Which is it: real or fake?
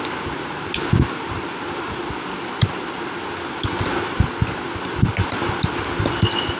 real